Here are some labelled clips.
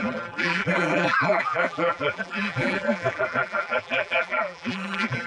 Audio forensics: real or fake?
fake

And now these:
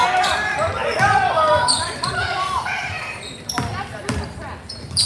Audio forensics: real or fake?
fake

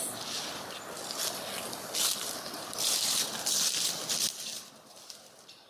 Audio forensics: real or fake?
real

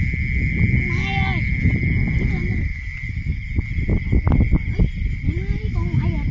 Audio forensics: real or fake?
real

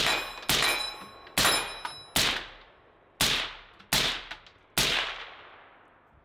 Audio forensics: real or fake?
real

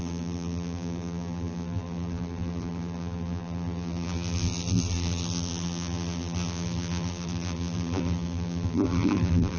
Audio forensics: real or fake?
fake